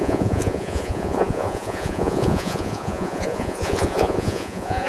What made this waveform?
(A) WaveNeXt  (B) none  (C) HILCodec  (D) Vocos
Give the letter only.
D